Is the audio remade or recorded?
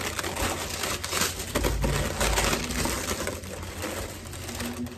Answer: recorded